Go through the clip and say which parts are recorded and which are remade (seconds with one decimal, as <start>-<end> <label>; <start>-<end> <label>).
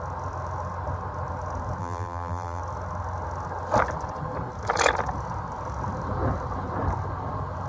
0.0-1.8 recorded; 1.8-2.6 remade; 2.6-7.7 recorded